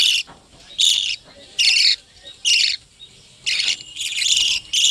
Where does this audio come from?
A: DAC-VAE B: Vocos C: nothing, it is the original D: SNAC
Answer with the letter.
C